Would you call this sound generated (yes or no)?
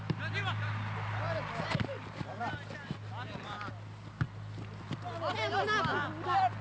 no